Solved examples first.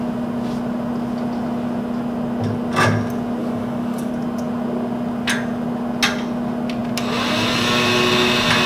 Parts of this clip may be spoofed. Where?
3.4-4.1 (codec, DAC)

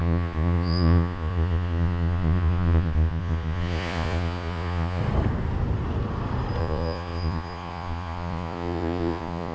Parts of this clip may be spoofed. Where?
0.0-5.0 (vocoder, Vocos); 6.6-9.5

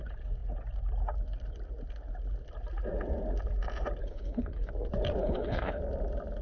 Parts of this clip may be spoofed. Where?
4.0-4.7 (codec, HILCodec); 5.2-5.8

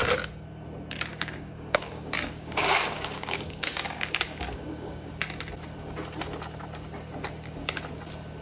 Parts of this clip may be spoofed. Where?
1.1-5.1 (codec, DAC)

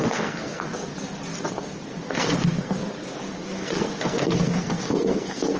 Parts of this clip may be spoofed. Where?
0.0-0.9 (codec, SNAC); 1.5-2.8; 3.3-5.6

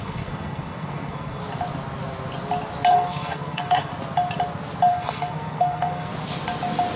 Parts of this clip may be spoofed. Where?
0.0-1.4 (codec, SNAC); 2.9-3.9; 4.9-6.1